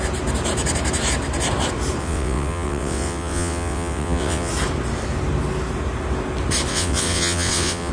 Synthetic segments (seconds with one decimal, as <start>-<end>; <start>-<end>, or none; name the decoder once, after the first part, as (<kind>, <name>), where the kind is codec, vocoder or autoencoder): 2.0-4.5 (vocoder, WaveNeXt); 6.7-7.9